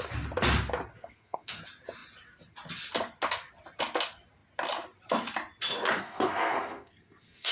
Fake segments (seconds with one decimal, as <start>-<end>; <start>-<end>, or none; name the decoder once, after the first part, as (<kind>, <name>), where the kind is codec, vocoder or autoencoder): 1.0-1.6 (codec, SNAC); 6.0-7.5